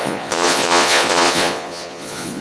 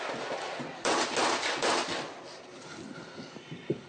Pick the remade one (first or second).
first